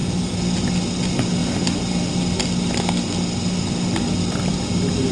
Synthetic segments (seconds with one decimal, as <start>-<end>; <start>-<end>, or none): none